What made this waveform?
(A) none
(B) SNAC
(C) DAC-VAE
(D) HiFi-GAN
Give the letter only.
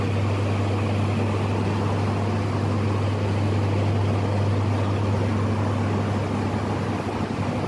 A